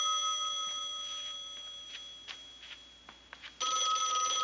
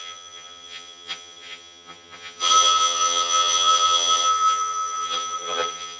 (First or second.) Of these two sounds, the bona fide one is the first